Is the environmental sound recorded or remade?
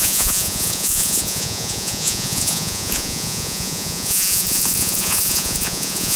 remade